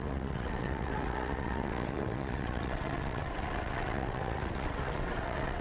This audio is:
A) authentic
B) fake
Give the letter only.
B